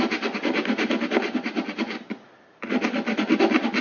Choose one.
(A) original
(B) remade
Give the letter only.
A